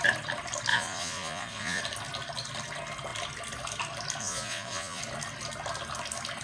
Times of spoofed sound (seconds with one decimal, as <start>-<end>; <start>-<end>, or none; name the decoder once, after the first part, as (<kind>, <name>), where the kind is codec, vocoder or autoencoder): 0.7-1.8 (vocoder, Vocos); 4.2-5.0